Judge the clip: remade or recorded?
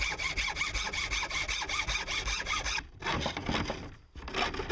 recorded